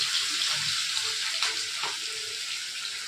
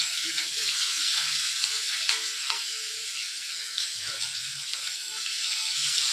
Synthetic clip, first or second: second